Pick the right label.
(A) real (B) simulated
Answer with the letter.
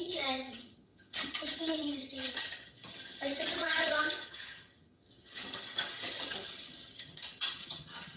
B